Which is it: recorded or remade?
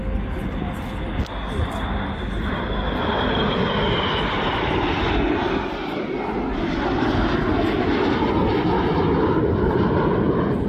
recorded